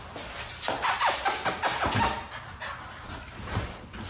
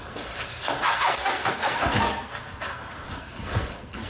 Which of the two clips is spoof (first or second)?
second